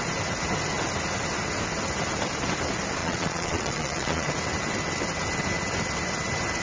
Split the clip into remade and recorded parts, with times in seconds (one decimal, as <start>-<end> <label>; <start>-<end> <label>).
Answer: 0.0-3.0 recorded; 3.0-4.3 remade; 4.3-6.6 recorded